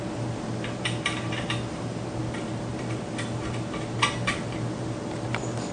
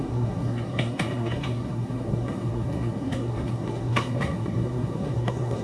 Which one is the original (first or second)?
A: first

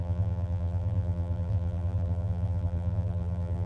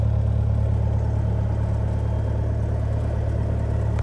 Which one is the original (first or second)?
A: second